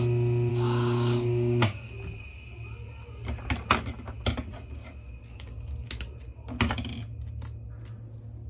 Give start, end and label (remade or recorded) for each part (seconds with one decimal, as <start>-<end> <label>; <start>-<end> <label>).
0.0-0.5 recorded; 0.5-1.9 remade; 1.9-5.3 recorded; 5.3-5.9 remade; 5.9-8.5 recorded